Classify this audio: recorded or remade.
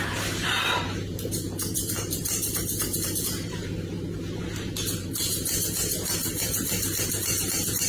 remade